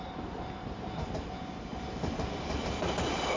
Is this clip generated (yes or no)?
no